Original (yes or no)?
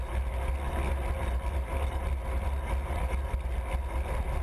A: yes